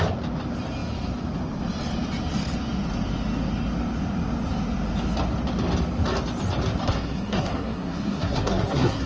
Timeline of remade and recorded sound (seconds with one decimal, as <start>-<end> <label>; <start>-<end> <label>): 0.0-6.8 recorded; 6.8-9.1 remade